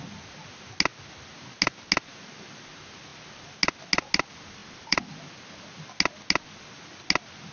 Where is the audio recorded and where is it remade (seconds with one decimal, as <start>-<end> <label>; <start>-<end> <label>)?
0.0-4.6 recorded; 4.6-5.2 remade; 5.2-7.5 recorded